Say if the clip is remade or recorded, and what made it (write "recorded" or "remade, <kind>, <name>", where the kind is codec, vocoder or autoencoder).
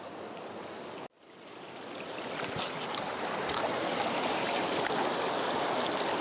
recorded